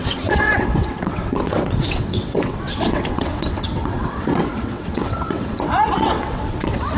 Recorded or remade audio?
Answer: remade